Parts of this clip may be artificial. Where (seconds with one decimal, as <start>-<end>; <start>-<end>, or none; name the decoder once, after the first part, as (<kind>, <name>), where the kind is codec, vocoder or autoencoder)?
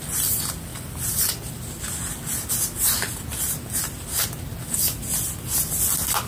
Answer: none